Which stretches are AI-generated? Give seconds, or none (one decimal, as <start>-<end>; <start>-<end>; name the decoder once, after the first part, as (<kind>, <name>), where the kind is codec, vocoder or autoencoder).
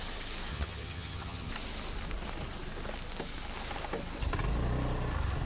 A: 0.5-1.5 (vocoder, HiFi-GAN)